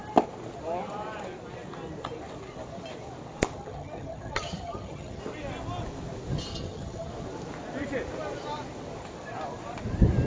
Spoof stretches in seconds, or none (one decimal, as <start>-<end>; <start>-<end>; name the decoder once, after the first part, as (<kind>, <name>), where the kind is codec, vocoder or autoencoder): 3.5-5.2 (vocoder, HiFi-GAN); 6.5-7.1